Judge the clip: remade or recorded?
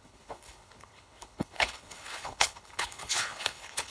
remade